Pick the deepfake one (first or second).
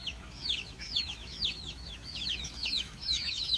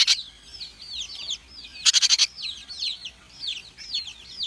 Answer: first